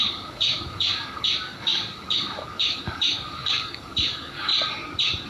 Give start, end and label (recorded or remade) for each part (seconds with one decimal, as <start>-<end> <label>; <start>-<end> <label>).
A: 0.0-4.5 remade; 4.5-5.3 recorded